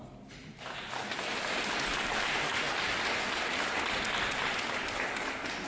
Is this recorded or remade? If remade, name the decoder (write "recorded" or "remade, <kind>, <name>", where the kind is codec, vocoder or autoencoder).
recorded